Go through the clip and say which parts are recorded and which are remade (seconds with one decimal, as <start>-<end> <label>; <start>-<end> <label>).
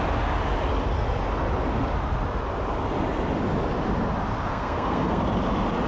0.0-4.5 recorded; 4.5-5.2 remade; 5.2-5.9 recorded